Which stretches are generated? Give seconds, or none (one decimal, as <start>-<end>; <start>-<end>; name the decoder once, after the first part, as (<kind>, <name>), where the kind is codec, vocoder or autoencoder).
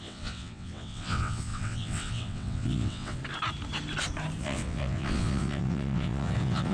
0.0-3.2 (vocoder, WaveNeXt); 4.4-6.7